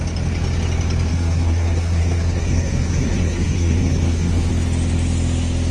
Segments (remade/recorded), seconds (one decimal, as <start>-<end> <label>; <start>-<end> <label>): 0.0-1.1 recorded; 1.1-4.5 remade; 4.5-5.7 recorded